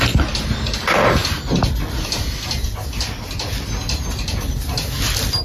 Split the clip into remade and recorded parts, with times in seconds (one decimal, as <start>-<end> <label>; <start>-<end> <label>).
0.0-5.4 recorded